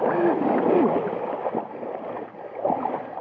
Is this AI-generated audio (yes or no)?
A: no